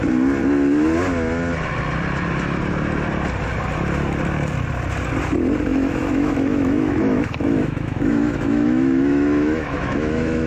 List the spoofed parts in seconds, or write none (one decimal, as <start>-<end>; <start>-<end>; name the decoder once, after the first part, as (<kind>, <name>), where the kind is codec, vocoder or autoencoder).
5.7-10.5 (autoencoder, DAC-VAE)